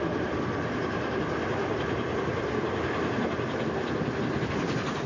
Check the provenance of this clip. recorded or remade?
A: recorded